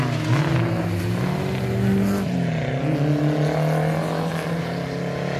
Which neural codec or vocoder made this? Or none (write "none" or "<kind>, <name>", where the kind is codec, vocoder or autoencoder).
none